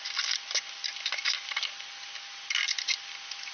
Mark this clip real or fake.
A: real